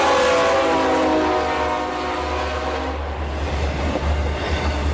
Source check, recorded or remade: recorded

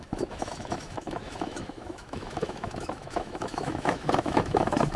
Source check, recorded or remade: remade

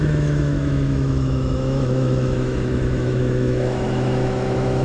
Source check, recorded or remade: remade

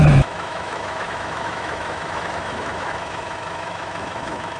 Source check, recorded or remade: remade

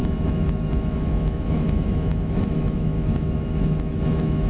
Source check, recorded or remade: remade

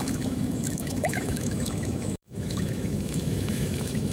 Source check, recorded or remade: remade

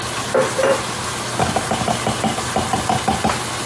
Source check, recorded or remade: recorded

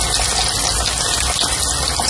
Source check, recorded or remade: recorded